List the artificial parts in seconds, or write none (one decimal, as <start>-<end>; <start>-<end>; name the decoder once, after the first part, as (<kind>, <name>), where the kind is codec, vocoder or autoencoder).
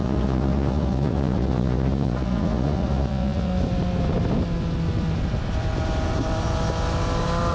0.0-3.5 (vocoder, Vocos)